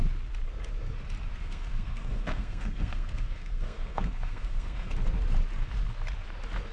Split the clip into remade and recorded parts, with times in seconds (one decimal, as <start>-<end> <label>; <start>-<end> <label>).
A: 0.0-1.4 recorded; 1.4-4.9 remade; 4.9-6.7 recorded